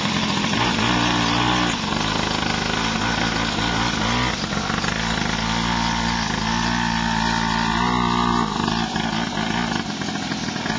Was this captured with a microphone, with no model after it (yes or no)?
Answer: yes